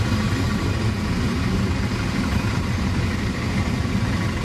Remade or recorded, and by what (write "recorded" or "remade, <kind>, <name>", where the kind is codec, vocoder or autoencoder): recorded